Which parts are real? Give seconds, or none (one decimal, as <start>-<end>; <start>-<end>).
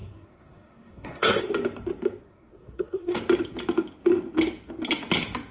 1.4-2.2; 3.2-5.5